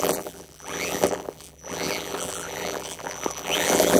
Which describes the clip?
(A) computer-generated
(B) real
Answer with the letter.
A